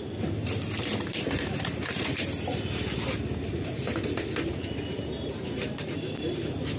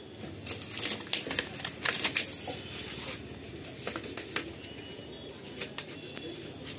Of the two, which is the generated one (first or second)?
first